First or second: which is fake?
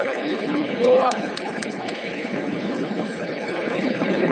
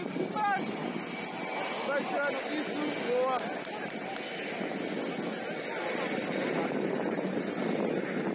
first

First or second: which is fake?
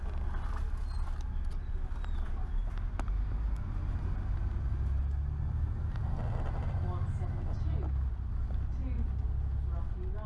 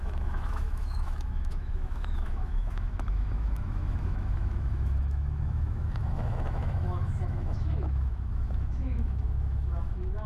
second